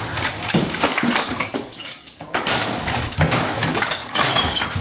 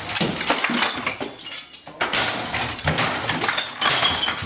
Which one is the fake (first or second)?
first